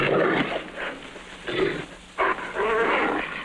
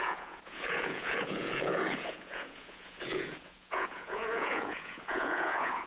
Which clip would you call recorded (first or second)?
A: first